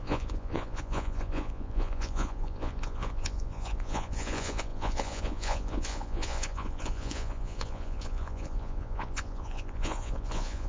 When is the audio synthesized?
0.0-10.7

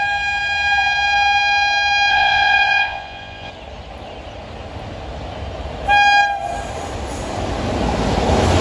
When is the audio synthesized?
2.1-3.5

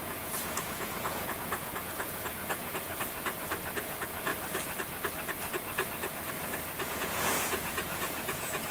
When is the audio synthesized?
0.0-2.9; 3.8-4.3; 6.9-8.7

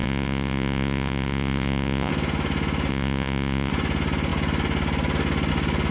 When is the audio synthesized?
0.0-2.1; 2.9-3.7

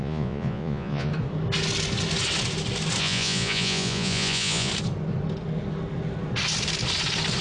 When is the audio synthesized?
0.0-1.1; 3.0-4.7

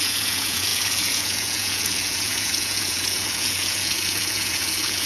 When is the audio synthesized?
0.0-5.1